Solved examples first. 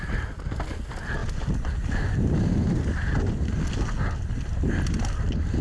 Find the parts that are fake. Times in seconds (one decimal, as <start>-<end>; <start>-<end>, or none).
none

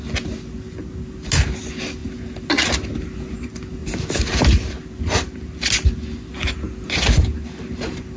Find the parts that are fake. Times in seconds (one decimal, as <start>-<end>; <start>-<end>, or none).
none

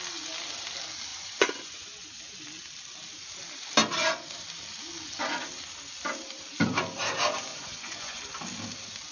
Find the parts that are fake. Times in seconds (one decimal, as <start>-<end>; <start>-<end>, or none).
1.1-2.3; 7.5-8.2

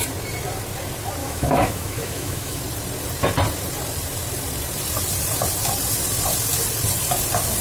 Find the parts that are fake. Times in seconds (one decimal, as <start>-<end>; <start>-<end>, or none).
1.2-2.6